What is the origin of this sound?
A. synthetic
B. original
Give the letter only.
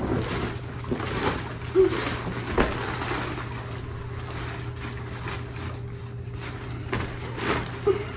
B